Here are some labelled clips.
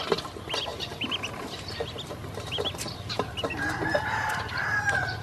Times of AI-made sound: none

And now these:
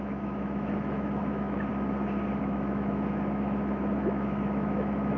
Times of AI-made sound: 0.0-1.7 (autoencoder, DAC-VAE); 2.4-5.2

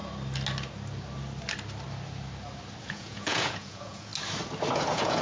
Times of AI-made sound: 2.8-4.1 (vocoder, Vocos); 4.8-5.2

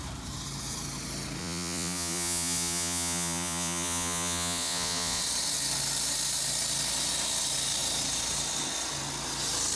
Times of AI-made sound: 1.4-5.2 (vocoder, Vocos)

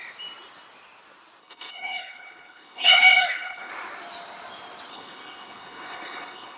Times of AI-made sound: 1.4-3.7 (codec, HILCodec); 4.9-6.6

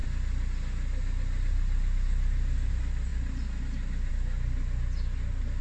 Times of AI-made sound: none

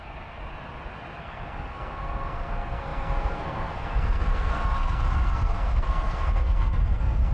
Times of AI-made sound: 0.0-0.4 (codec, SNAC); 1.2-7.3

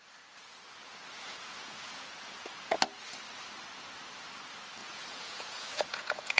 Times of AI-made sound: 0.8-2.8 (vocoder, Vocos); 4.8-6.4